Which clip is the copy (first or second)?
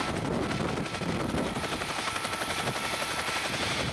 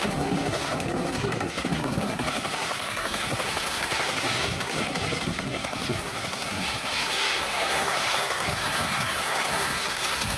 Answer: second